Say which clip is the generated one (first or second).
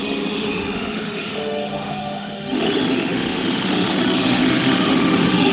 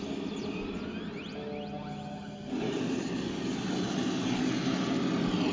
first